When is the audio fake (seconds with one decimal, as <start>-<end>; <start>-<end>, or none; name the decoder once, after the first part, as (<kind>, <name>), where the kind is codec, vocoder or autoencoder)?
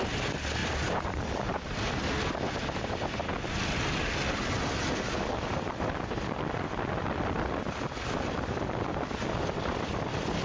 0.6-2.1 (vocoder, BigVGAN v2)